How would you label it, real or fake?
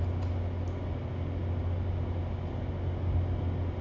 real